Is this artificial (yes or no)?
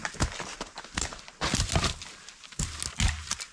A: no